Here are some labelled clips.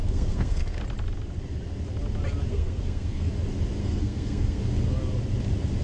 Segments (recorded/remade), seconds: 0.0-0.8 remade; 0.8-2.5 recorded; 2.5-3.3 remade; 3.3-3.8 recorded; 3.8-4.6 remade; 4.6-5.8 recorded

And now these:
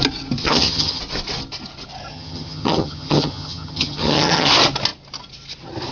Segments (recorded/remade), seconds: 0.0-0.4 recorded; 0.4-1.0 remade; 1.0-2.1 recorded; 2.1-4.5 remade; 4.5-5.9 recorded

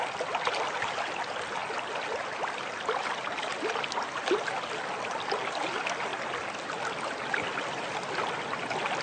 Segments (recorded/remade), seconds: 0.0-9.0 recorded

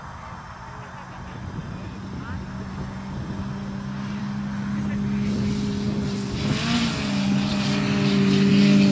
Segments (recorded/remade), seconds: 0.0-8.9 recorded

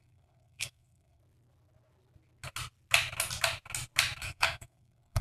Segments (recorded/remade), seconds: 0.0-1.2 remade; 1.2-4.2 recorded; 4.2-5.2 remade

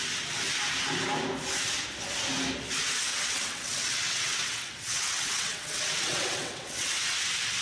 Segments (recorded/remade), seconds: 0.0-3.1 recorded; 3.1-6.9 remade; 6.9-7.6 recorded

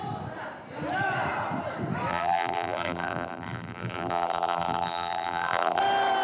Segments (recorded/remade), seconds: 0.0-2.1 recorded; 2.1-5.8 remade; 5.8-6.2 recorded

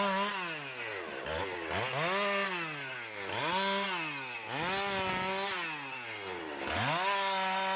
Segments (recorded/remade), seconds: 0.0-7.8 recorded